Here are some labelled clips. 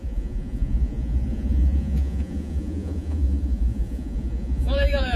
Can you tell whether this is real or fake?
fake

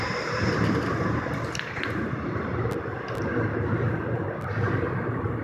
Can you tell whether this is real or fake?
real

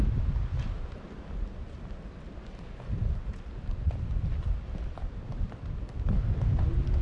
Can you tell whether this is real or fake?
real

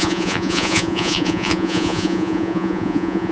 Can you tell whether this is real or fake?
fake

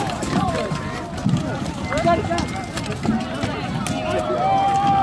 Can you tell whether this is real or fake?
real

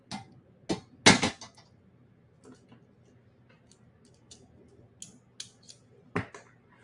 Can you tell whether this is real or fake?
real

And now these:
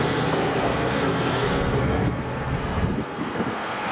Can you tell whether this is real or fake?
fake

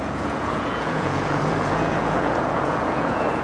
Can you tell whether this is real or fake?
fake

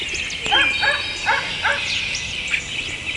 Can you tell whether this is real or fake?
real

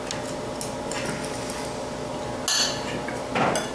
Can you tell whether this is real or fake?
real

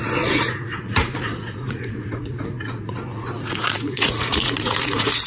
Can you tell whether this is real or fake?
fake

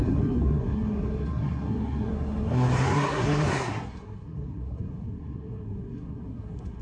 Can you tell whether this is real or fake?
fake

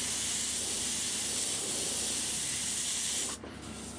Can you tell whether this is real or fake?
real